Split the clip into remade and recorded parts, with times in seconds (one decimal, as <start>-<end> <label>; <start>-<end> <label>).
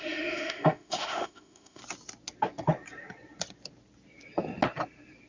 0.0-1.8 remade; 1.8-5.3 recorded